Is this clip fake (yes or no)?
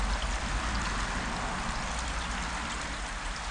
no